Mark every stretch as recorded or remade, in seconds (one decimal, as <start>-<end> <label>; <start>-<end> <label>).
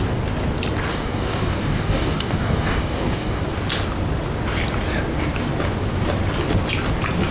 0.0-0.9 recorded; 0.9-3.4 remade; 3.4-7.3 recorded